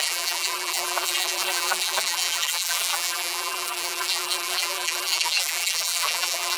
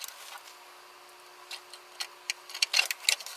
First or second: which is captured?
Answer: second